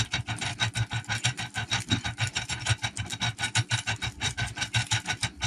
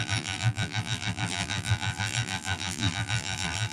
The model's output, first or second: second